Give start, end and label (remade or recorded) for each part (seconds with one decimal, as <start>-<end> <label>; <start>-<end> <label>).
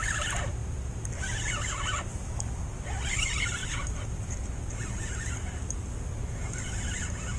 0.0-7.4 recorded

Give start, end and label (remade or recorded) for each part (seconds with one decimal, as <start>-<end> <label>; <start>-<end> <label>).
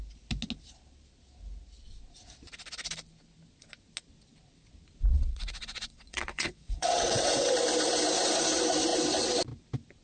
0.0-5.1 recorded; 5.1-7.5 remade; 7.5-10.0 recorded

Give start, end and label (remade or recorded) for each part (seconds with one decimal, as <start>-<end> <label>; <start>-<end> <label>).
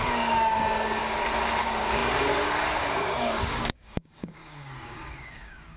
0.0-1.0 remade; 1.0-1.6 recorded; 1.6-5.8 remade